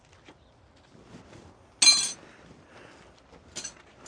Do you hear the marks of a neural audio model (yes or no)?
no